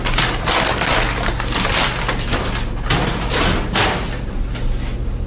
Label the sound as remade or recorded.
recorded